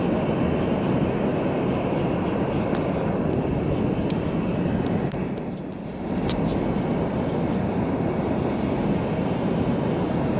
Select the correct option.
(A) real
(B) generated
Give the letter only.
A